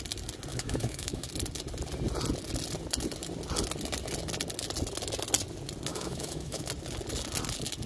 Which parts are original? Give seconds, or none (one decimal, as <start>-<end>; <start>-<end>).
0.0-0.5; 1.3-5.9; 6.7-7.9